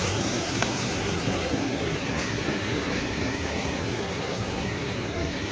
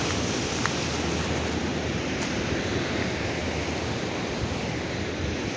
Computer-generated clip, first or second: first